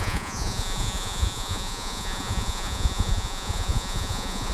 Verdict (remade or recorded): remade